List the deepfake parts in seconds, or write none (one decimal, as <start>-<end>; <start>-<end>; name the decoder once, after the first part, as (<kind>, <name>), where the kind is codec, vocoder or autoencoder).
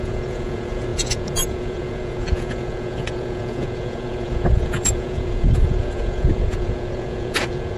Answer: 0.0-7.8 (vocoder, Vocos)